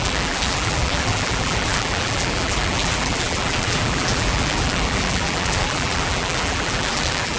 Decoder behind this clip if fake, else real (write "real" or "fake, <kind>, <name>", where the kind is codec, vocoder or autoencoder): fake, vocoder, BigVGAN v2